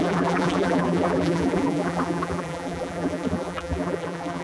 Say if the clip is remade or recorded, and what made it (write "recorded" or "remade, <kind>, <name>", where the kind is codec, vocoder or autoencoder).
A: remade, vocoder, BigVGAN v2